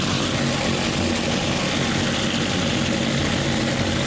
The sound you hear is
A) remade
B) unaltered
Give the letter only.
B